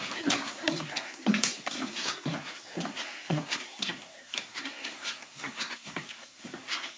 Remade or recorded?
remade